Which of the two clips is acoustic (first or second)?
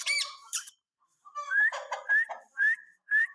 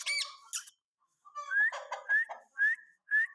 second